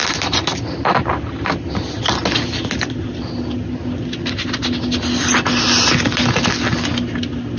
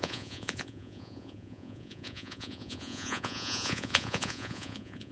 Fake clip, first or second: second